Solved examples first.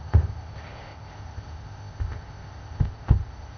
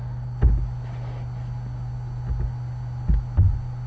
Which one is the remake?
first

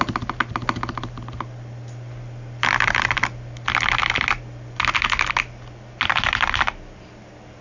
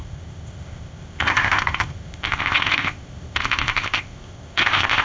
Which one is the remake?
second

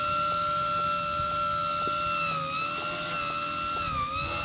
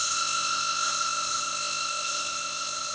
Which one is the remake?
second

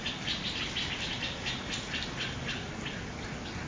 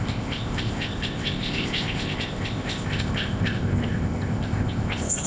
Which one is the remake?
second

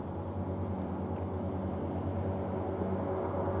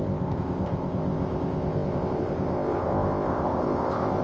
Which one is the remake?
second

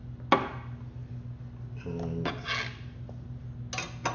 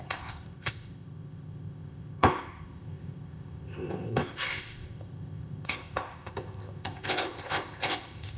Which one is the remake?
second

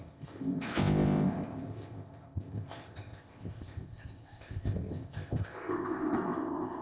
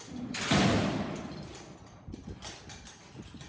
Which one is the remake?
first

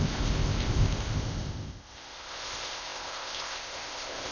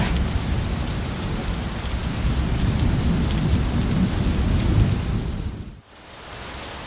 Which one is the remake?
first